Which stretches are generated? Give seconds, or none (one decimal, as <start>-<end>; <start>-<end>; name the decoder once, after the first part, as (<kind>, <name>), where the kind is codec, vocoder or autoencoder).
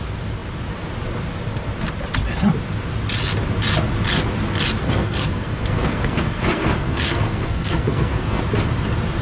4.8-8.4 (codec, SNAC)